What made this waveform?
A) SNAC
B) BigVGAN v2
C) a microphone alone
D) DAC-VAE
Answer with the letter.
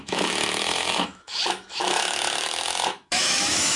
D